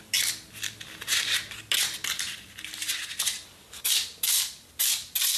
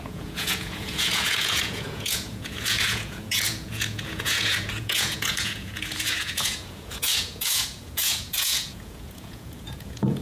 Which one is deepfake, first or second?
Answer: second